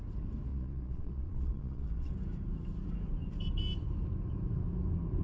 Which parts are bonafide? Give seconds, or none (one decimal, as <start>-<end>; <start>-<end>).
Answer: 0.0-0.5; 2.1-5.2